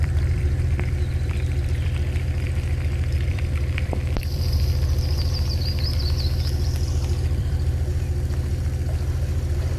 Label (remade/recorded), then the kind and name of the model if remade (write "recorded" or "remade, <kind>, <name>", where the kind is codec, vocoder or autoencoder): remade, vocoder, BigVGAN v2